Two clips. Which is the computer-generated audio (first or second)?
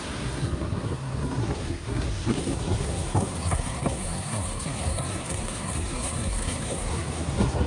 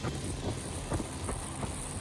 first